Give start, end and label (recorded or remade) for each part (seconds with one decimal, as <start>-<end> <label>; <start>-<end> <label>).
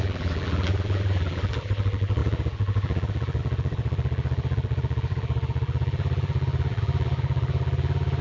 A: 0.0-8.2 remade